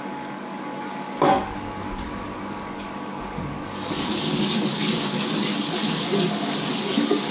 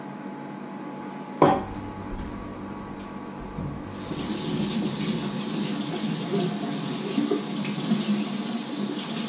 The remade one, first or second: first